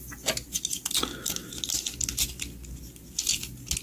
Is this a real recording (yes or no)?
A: yes